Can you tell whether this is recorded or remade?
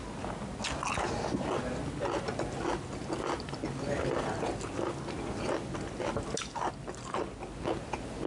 recorded